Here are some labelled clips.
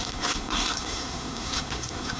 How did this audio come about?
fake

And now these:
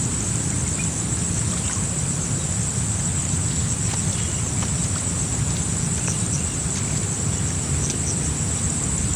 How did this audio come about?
real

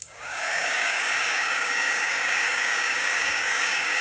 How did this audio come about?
fake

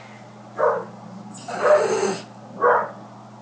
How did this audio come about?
real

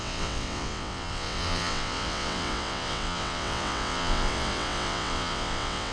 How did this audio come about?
fake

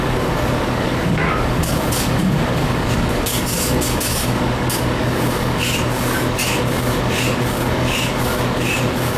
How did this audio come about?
fake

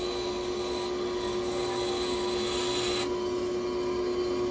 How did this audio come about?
real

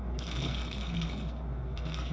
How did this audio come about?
fake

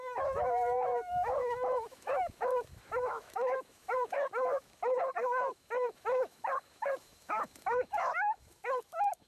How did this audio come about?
fake